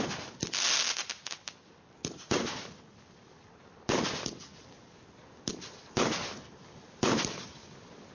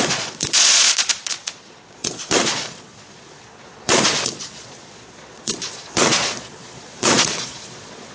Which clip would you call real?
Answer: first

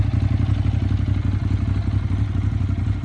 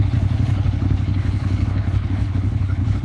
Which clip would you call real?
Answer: first